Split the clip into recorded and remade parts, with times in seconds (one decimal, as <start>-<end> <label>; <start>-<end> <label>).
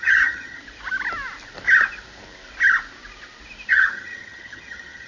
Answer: 0.0-0.6 remade; 0.6-3.7 recorded; 3.7-5.1 remade